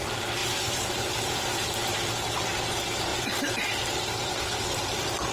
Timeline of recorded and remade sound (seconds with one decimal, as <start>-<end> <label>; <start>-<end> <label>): 0.0-0.4 recorded; 0.4-2.0 remade; 2.0-3.1 recorded; 3.1-3.7 remade; 3.7-5.3 recorded